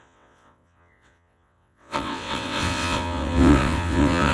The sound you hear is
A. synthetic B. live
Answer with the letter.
A